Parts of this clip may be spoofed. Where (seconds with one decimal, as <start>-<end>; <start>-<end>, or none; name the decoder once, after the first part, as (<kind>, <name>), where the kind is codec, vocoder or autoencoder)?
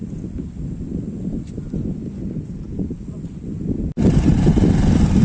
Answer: none